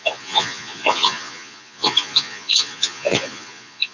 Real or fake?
fake